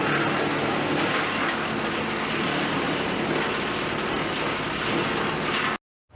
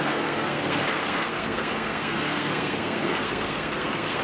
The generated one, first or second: second